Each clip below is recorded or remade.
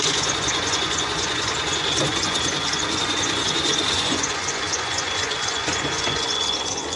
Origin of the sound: remade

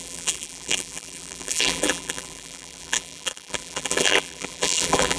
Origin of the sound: remade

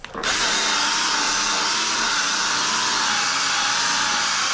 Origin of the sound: recorded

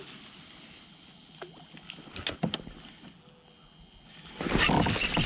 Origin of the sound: recorded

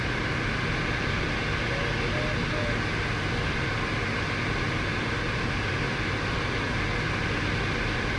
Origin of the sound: recorded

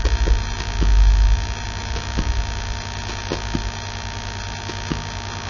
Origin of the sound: recorded